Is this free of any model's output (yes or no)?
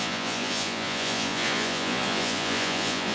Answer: no